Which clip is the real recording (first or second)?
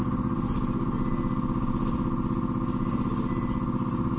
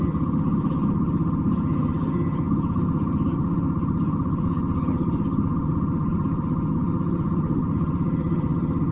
first